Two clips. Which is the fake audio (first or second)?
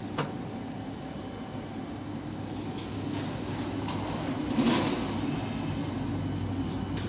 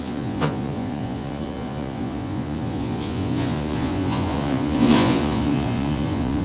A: second